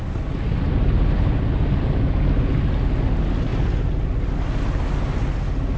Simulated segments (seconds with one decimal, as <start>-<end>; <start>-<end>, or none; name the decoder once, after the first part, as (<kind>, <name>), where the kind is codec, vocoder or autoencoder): none

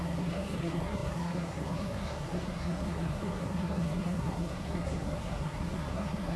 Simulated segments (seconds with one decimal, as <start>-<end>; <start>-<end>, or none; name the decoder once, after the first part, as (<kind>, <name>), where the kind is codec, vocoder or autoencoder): 0.0-6.4 (codec, SNAC)

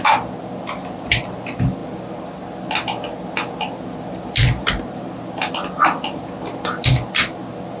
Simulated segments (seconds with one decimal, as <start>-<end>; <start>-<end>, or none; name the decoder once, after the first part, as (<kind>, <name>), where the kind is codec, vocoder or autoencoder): none

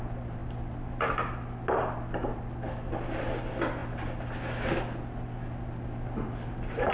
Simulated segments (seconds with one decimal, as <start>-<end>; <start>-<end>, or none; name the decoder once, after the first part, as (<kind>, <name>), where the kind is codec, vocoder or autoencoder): none